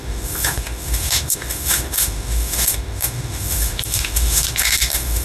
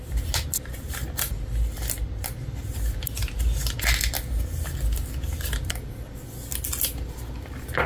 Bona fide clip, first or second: second